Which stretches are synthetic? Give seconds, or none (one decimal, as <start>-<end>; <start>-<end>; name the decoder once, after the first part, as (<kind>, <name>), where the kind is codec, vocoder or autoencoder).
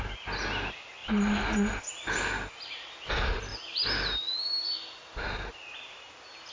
none